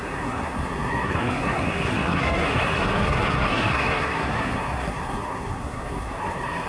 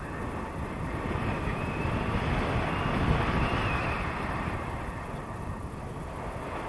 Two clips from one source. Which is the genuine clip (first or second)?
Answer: second